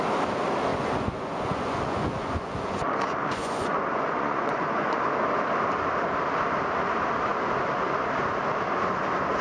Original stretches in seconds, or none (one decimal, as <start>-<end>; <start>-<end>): 0.0-0.7; 5.0-9.4